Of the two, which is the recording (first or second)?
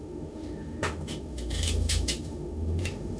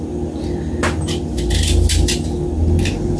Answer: second